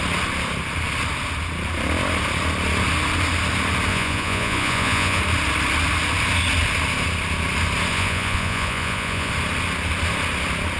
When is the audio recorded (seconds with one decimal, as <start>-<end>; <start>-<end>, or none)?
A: 0.0-3.9; 5.2-7.9; 9.3-10.8